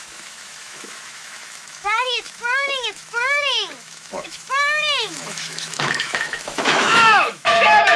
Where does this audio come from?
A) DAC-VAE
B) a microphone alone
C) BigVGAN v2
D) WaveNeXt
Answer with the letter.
A